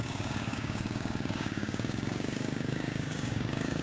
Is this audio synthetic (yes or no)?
yes